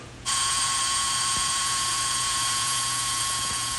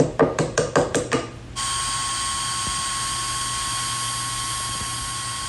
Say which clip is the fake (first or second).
first